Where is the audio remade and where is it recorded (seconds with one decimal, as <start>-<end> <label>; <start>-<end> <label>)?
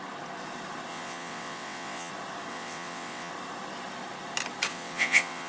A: 0.0-0.9 recorded; 0.9-2.1 remade; 2.1-2.5 recorded; 2.5-3.3 remade; 3.3-4.7 recorded; 4.7-5.5 remade